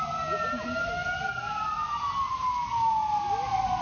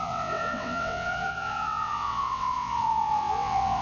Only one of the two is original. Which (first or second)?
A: first